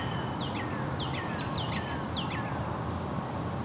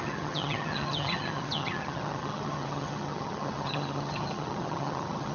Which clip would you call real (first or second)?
first